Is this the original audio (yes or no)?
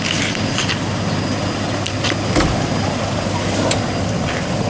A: yes